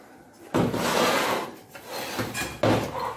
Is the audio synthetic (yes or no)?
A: no